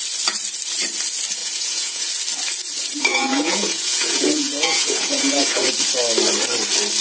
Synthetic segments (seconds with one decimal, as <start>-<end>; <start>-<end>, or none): 1.4-2.1; 3.1-5.6